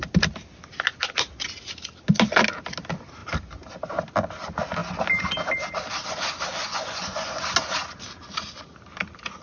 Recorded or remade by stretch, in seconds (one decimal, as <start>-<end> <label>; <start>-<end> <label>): 0.0-6.6 recorded; 6.6-7.4 remade; 7.4-9.4 recorded